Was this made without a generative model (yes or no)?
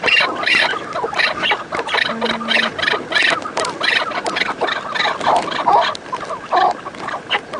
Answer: yes